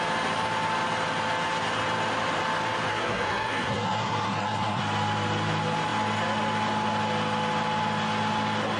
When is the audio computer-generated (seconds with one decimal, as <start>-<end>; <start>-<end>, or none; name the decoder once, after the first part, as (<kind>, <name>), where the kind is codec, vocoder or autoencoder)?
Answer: 2.9-4.8 (codec, SNAC)